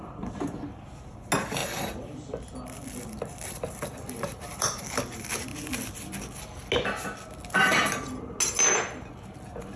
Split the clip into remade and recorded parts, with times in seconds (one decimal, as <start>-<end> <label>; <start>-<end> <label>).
0.0-1.6 recorded; 1.6-4.8 remade; 4.8-9.8 recorded